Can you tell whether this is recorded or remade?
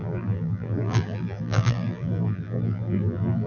remade